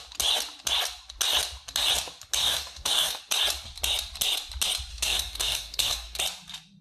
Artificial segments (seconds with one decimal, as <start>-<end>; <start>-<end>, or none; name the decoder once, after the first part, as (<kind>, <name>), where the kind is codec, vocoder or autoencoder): 2.4-3.2 (codec, DAC); 4.9-6.2